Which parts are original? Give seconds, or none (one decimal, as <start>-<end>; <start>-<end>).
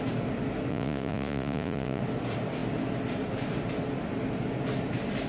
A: 0.0-0.7; 2.0-5.3